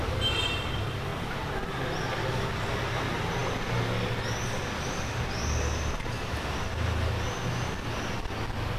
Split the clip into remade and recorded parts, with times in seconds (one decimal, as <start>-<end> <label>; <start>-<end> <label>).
0.0-8.8 recorded